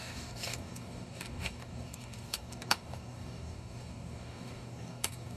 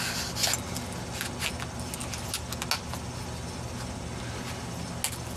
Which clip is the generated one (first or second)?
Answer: first